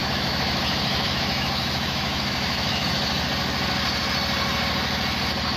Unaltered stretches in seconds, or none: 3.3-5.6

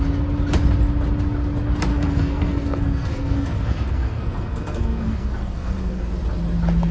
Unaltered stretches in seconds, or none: 0.0-1.9; 6.0-6.9

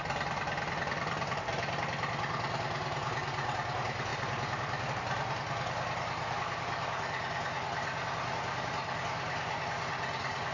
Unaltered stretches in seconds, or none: 0.0-10.5

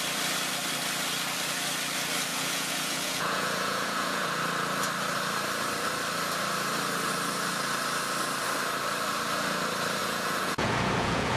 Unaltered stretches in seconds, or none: 0.0-2.3; 4.4-10.0

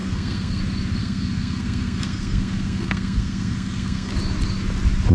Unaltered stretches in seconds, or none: 0.6-1.0; 4.1-5.1